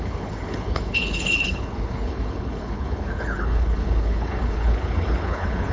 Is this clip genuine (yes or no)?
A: no